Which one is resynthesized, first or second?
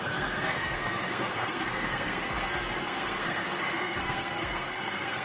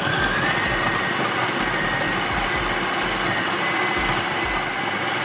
first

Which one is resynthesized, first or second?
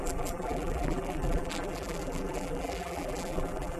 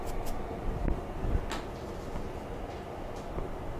first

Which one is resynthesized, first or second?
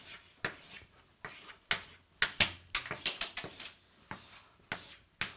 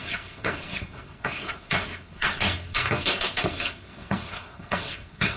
second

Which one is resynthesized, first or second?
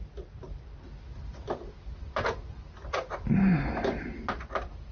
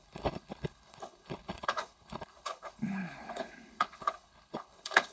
second